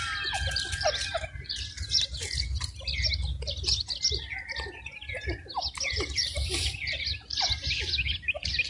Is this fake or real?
real